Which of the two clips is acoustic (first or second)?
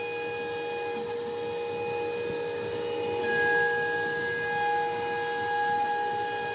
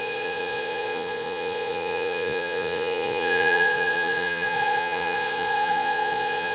first